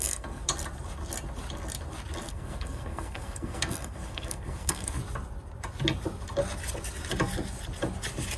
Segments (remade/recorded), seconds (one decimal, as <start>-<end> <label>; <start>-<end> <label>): 0.0-0.5 remade; 0.5-2.3 recorded; 2.3-5.0 remade; 5.0-8.4 recorded

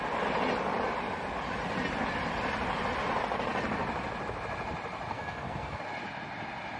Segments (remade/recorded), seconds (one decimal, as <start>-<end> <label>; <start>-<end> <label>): 0.0-5.1 recorded; 5.1-5.8 remade; 5.8-6.8 recorded

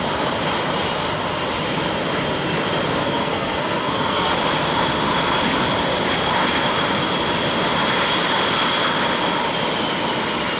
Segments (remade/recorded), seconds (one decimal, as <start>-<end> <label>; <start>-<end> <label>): 0.0-3.0 recorded; 3.0-4.3 remade; 4.3-10.6 recorded

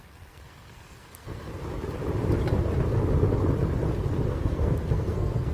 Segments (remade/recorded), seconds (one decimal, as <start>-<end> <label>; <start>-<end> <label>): 0.0-1.5 remade; 1.5-4.3 recorded; 4.3-5.5 remade

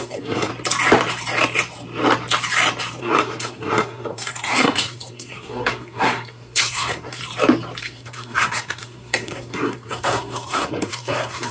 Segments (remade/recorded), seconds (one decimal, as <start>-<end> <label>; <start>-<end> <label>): 0.0-0.5 remade; 0.5-3.0 recorded; 3.0-7.2 remade; 7.2-7.8 recorded; 7.8-11.5 remade